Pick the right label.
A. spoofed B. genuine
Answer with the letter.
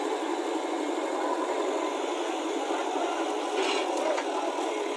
A